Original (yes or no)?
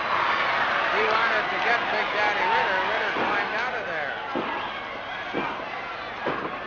yes